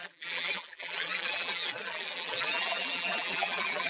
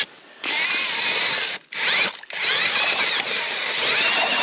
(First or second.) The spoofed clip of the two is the first